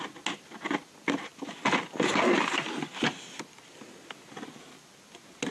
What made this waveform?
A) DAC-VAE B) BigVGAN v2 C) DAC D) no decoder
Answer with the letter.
D